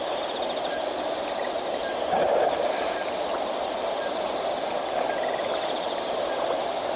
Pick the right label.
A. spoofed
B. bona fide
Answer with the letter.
B